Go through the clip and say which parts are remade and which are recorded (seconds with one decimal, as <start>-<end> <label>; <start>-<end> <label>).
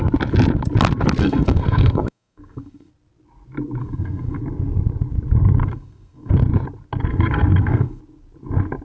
0.0-1.2 recorded; 1.2-2.9 remade; 2.9-3.8 recorded; 3.8-4.4 remade; 4.4-5.6 recorded; 5.6-6.3 remade; 6.3-7.1 recorded; 7.1-8.0 remade; 8.0-8.8 recorded